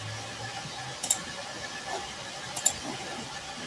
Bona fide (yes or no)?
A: yes